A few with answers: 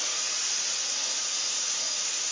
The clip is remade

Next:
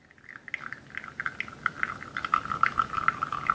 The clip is recorded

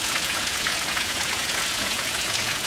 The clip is remade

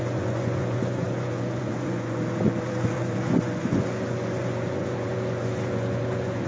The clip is remade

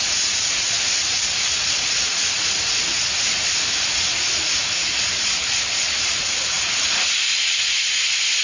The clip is remade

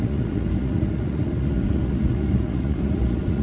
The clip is remade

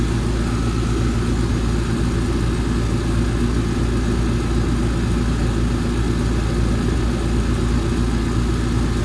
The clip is recorded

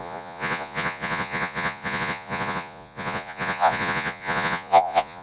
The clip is remade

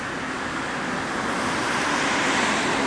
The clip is recorded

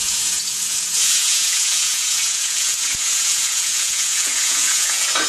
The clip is remade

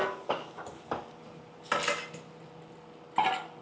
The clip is recorded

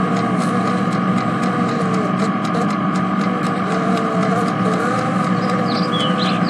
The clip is recorded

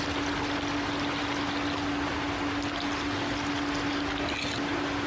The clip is recorded